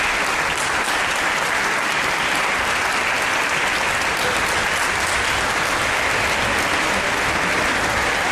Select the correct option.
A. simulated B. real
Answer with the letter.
B